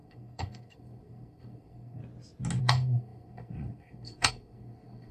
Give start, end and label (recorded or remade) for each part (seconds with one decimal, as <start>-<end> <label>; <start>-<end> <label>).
0.0-2.0 remade; 2.0-2.6 recorded; 2.6-5.1 remade

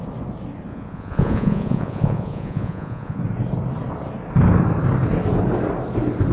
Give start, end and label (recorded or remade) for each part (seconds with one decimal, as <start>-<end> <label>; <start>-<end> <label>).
0.0-0.7 recorded; 0.7-3.2 remade; 3.2-6.3 recorded

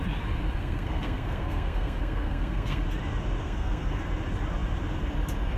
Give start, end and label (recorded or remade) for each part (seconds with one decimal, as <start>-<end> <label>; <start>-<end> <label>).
0.0-0.6 recorded; 0.6-2.8 remade; 2.8-3.4 recorded; 3.4-4.0 remade; 4.0-5.6 recorded

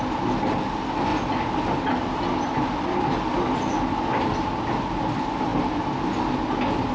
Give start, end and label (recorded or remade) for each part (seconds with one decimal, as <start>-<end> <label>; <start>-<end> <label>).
0.0-6.9 recorded

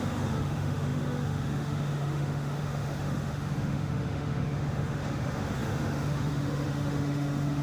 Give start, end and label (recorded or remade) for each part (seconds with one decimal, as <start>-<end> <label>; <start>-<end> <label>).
0.0-7.6 remade